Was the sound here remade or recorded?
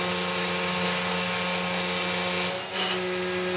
recorded